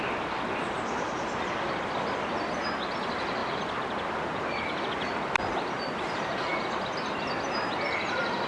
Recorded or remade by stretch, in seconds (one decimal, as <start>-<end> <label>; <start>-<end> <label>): 0.0-8.5 recorded